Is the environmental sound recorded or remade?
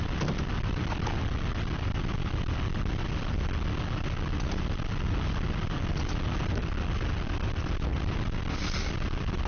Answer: recorded